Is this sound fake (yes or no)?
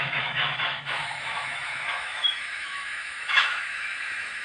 yes